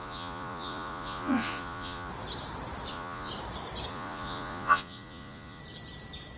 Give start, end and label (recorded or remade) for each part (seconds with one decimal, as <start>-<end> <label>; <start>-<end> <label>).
0.0-2.1 remade; 2.1-2.9 recorded; 2.9-3.3 remade; 3.3-3.9 recorded; 3.9-5.6 remade; 5.6-6.4 recorded